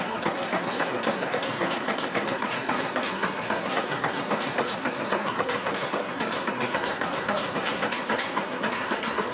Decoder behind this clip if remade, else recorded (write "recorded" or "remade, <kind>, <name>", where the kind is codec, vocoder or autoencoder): remade, codec, SNAC